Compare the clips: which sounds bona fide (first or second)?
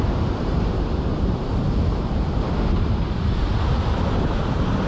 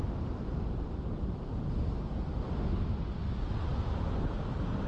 second